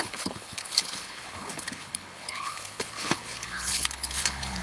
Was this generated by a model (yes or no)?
yes